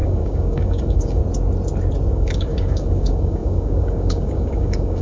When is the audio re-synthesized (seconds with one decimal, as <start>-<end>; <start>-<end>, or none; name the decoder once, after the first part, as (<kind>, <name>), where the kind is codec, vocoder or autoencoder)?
0.0-1.2 (codec, DAC); 2.1-5.0